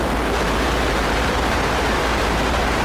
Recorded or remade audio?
remade